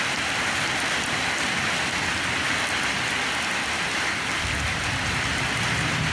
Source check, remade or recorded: recorded